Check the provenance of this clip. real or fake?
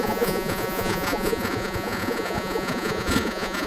fake